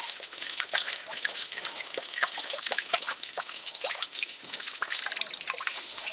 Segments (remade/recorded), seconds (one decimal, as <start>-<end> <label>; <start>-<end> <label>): 0.0-5.0 remade; 5.0-5.6 recorded; 5.6-6.1 remade